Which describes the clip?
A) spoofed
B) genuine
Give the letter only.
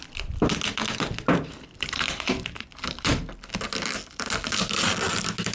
B